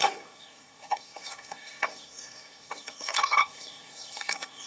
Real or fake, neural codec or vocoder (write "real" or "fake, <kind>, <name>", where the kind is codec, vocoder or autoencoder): fake, codec, SNAC